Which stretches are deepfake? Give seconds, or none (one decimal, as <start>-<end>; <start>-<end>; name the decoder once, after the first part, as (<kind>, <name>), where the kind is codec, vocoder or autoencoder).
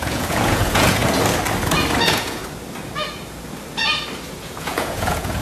0.0-1.0 (vocoder, Vocos); 2.0-2.4; 4.4-5.4